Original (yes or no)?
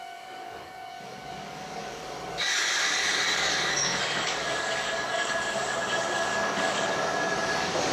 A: no